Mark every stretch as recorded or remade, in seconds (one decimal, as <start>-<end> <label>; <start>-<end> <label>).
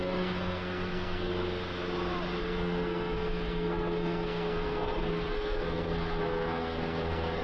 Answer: 0.0-1.3 remade; 1.3-2.4 recorded; 2.4-7.4 remade